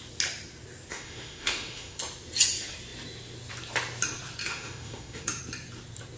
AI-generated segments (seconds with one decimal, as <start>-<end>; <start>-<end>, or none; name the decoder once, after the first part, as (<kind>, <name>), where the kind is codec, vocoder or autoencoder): 0.9-2.0 (autoencoder, DAC-VAE); 4.4-5.4